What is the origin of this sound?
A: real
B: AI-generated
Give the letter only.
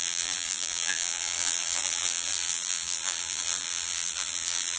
B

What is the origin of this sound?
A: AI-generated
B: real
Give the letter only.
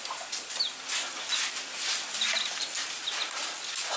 A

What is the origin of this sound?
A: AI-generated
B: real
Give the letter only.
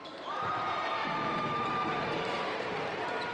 A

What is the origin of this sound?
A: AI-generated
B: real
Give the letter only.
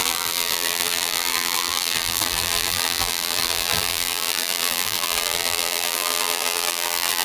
A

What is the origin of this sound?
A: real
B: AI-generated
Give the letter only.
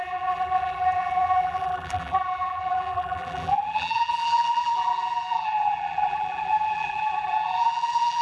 B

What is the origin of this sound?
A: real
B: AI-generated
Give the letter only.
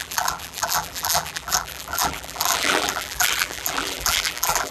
B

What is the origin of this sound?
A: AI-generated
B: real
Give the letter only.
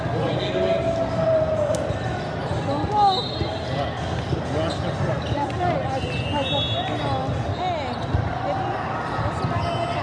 B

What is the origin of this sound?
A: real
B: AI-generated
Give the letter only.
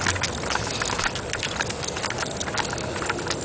A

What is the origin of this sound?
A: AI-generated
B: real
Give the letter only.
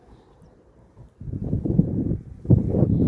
A